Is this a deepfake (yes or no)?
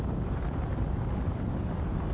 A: yes